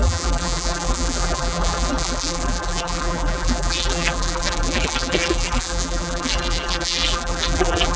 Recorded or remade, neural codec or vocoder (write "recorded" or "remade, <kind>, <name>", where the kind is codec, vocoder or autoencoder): remade, vocoder, BigVGAN v2